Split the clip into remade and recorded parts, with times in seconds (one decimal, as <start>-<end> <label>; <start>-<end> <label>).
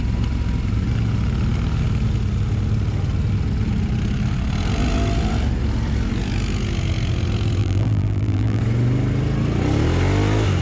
0.0-7.6 recorded; 7.6-8.6 remade; 8.6-10.6 recorded